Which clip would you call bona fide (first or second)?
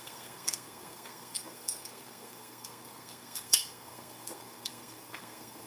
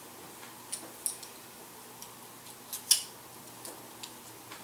second